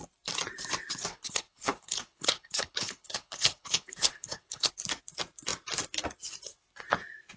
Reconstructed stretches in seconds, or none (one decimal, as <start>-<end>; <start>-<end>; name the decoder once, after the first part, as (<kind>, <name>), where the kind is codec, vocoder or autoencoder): 1.1-4.7 (codec, HILCodec)